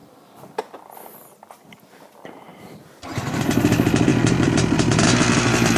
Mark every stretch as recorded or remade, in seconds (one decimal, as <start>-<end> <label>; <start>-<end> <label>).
0.0-0.6 remade; 0.6-2.5 recorded; 2.5-3.4 remade; 3.4-4.1 recorded; 4.1-5.8 remade